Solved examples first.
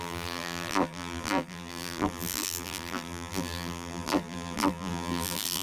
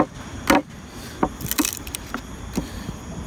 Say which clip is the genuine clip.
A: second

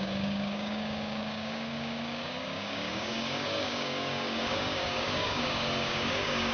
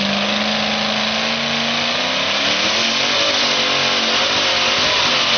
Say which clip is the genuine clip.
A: second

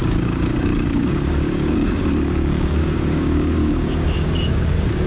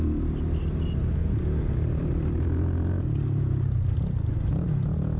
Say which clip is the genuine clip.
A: second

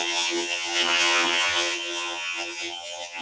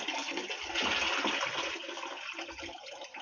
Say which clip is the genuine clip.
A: second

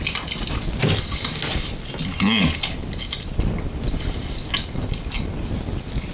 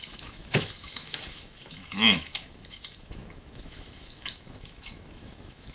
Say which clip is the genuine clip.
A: first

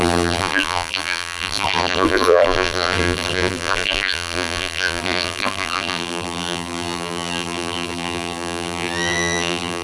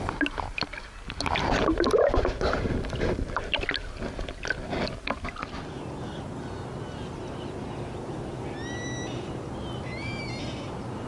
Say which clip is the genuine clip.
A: second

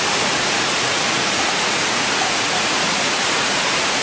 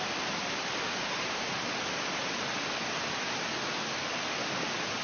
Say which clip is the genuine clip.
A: second